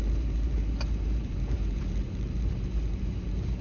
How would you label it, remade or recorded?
remade